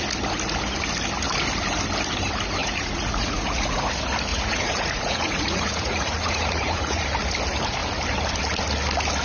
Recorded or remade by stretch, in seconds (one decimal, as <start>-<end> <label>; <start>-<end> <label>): 0.0-2.6 recorded; 2.6-3.8 remade; 3.8-4.3 recorded; 4.3-7.0 remade; 7.0-9.2 recorded